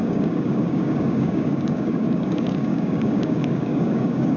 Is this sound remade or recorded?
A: remade